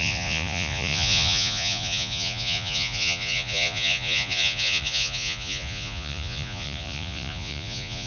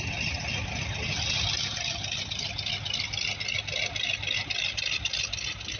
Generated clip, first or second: first